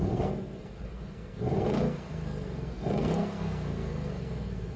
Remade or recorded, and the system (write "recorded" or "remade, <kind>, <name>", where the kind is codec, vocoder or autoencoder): remade, codec, SNAC